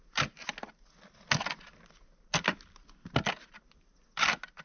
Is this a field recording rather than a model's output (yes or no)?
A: yes